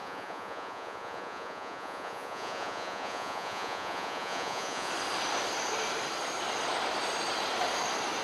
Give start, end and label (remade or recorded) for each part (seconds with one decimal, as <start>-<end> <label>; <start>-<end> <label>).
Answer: 0.0-4.9 remade; 4.9-8.2 recorded